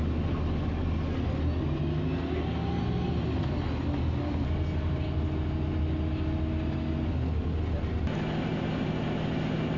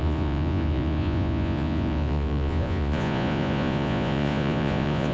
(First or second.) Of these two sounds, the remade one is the second